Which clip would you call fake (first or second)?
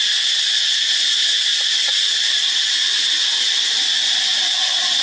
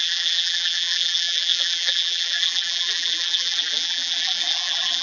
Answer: second